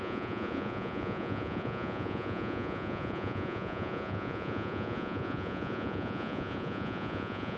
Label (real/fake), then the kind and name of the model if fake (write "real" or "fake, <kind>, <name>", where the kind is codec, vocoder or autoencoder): fake, vocoder, Vocos